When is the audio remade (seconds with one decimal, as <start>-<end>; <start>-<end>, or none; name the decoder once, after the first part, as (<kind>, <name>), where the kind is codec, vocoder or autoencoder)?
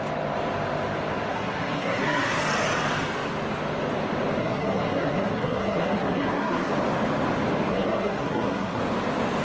1.3-2.4 (codec, SNAC); 4.4-6.7; 7.7-8.8